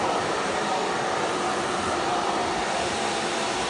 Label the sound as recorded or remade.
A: recorded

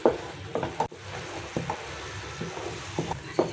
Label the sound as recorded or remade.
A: recorded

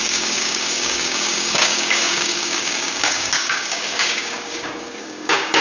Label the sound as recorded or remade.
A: remade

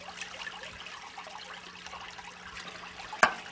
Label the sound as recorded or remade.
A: recorded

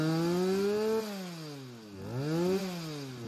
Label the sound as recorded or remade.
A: recorded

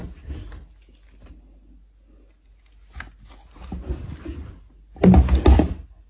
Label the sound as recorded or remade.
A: recorded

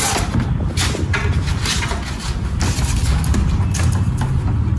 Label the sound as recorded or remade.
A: recorded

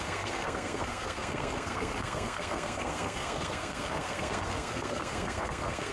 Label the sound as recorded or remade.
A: remade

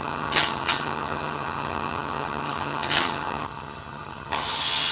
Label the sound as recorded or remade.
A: remade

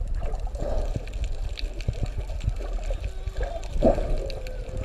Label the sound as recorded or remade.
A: recorded